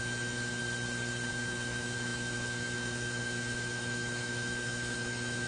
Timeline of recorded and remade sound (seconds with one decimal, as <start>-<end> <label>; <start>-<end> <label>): 0.0-0.6 remade; 0.6-1.3 recorded; 1.3-5.5 remade